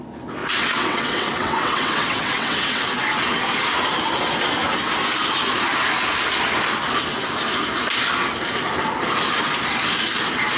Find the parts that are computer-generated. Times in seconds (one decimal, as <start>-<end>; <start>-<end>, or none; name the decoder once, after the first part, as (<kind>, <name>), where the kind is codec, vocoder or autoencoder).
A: 0.4-2.8 (vocoder, WaveNeXt)

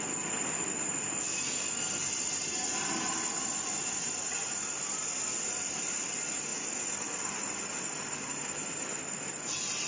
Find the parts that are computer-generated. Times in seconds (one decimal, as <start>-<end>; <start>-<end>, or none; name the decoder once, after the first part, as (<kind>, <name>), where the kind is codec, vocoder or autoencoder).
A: none

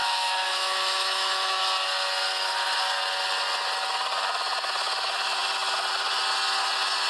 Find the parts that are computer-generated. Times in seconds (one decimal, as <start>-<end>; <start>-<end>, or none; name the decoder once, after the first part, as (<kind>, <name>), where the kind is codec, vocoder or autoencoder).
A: 0.0-1.6 (autoencoder, DAC-VAE)